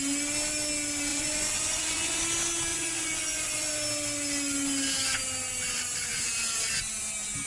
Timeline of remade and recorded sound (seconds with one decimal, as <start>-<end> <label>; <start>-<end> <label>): 0.0-1.1 recorded; 1.1-2.2 remade; 2.2-2.7 recorded; 2.7-3.7 remade; 3.7-7.5 recorded